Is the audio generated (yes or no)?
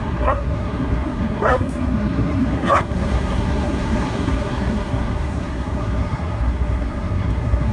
yes